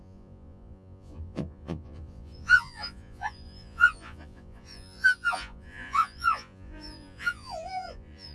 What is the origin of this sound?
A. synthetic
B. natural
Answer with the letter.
A